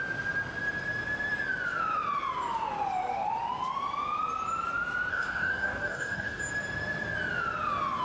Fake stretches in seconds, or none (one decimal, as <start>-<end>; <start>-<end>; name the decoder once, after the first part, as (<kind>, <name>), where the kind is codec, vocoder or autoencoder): 5.1-6.4 (codec, DAC)